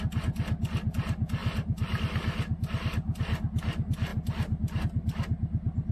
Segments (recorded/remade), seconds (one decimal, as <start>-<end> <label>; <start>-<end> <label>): 0.0-1.4 recorded; 1.4-2.0 remade; 2.0-5.9 recorded